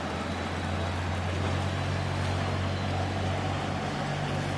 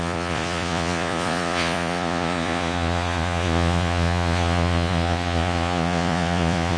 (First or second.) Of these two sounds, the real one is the first